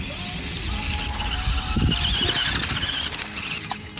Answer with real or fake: real